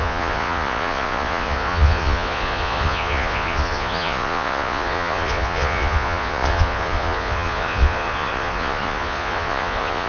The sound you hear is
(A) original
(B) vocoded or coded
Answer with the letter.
B